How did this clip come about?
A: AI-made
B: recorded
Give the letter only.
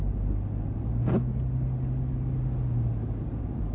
B